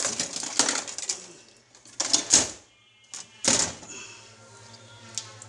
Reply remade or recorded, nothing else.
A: recorded